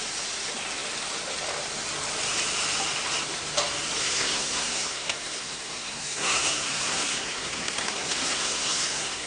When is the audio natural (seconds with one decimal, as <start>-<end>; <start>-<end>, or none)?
0.0-4.0